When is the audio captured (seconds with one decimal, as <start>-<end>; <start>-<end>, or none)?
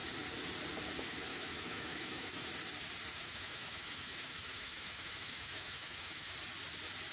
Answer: 0.0-1.3; 2.5-3.1; 6.3-7.1